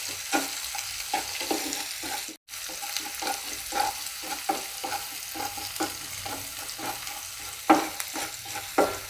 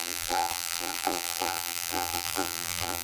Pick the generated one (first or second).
second